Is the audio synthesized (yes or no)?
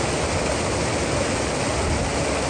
no